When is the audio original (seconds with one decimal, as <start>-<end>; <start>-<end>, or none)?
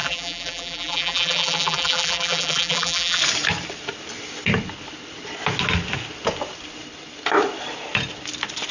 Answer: 3.2-8.7